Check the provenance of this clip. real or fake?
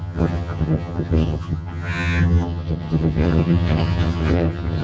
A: fake